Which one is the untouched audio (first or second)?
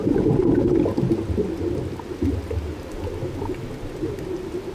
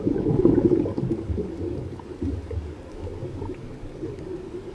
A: first